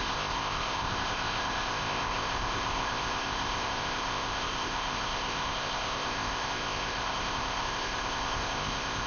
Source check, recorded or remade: remade